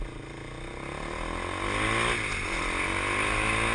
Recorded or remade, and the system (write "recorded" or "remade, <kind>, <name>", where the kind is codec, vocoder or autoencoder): recorded